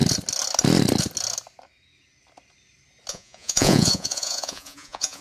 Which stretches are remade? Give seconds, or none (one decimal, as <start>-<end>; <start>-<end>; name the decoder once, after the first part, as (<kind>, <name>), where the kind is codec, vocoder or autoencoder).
3.1-5.2 (vocoder, Vocos)